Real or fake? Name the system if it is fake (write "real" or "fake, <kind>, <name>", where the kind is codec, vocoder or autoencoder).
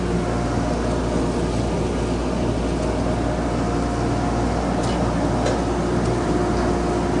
real